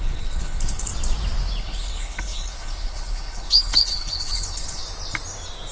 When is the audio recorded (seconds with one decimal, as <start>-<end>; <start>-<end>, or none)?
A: 0.9-1.6; 4.8-5.7